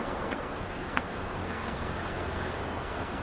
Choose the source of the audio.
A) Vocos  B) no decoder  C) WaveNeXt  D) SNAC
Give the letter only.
D